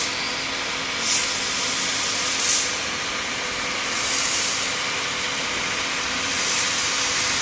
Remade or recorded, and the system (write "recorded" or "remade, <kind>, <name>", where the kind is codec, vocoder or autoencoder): recorded